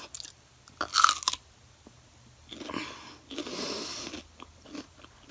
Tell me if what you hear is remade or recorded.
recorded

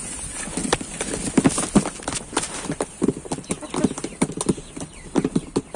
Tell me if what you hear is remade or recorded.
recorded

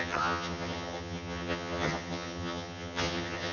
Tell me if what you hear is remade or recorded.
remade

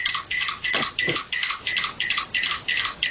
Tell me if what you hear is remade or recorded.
recorded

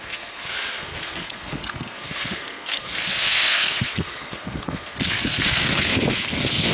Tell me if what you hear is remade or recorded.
remade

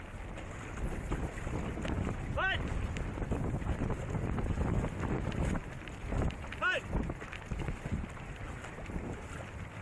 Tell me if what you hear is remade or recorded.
recorded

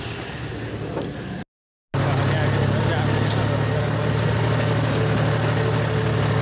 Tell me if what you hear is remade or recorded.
recorded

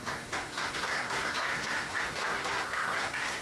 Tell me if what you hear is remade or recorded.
remade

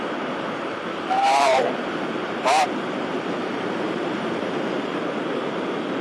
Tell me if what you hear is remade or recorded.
remade